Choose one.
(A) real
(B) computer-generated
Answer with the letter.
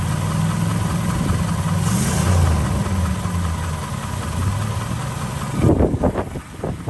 A